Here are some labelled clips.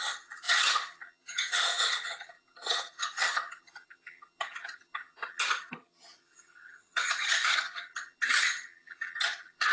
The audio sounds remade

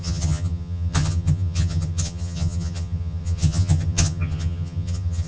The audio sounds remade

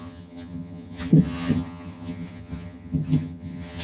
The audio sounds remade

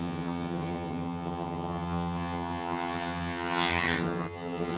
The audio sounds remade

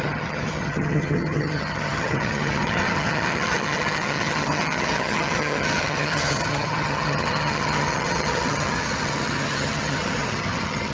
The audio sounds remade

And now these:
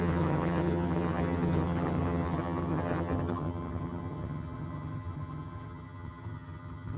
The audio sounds remade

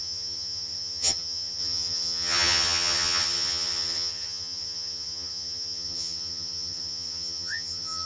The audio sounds remade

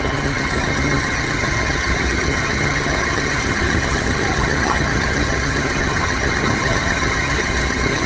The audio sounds remade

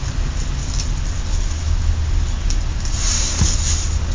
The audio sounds recorded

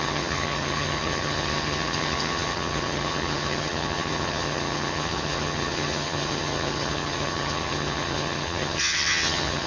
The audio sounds remade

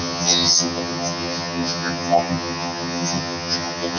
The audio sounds remade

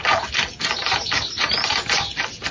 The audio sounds recorded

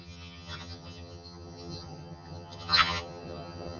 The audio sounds remade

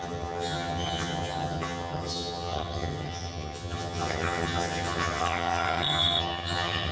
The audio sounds remade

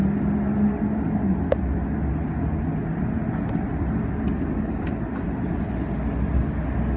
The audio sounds recorded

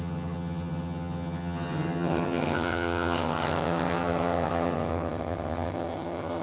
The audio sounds remade